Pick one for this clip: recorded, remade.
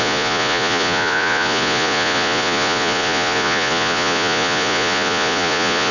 remade